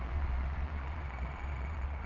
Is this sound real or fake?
fake